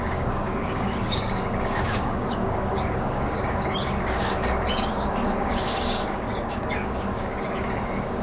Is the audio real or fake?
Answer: fake